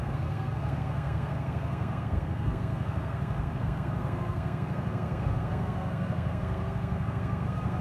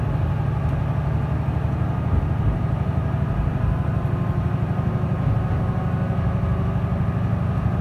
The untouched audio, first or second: second